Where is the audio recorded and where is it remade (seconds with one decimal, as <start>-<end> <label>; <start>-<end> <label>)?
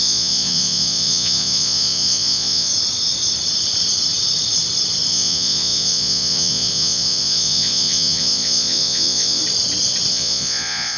0.0-2.7 remade; 2.7-5.1 recorded; 5.1-9.4 remade; 9.4-10.1 recorded; 10.1-11.0 remade